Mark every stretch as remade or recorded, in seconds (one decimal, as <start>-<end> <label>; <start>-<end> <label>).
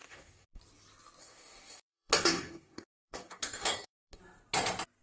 0.0-0.6 remade; 0.6-1.2 recorded; 1.2-4.2 remade; 4.2-5.0 recorded